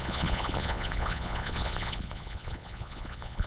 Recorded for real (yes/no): no